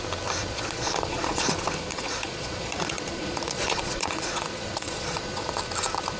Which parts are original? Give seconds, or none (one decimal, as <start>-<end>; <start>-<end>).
0.0-0.4; 1.5-1.9; 5.6-6.2